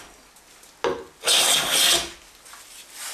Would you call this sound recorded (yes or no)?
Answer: yes